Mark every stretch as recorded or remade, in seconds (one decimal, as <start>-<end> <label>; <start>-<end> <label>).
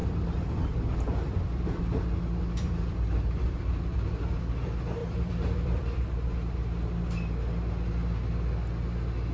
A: 0.0-3.6 remade; 3.6-5.0 recorded; 5.0-6.5 remade; 6.5-9.3 recorded